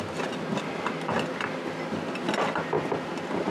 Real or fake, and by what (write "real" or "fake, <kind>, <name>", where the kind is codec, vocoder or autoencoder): real